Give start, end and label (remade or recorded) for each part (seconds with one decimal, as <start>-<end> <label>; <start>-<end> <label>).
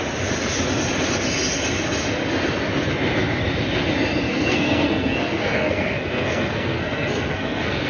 0.0-4.3 recorded; 4.3-7.9 remade